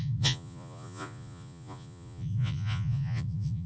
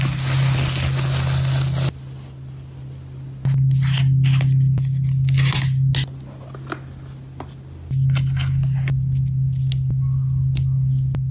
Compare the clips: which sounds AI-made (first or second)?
first